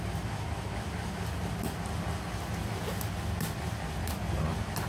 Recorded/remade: recorded